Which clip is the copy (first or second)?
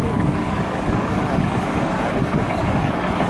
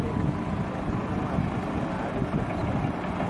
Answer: first